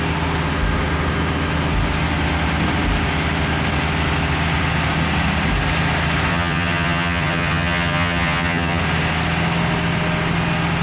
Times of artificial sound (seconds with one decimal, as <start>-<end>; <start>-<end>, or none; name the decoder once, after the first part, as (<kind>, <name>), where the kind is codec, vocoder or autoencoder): 6.3-8.8 (vocoder, HiFi-GAN)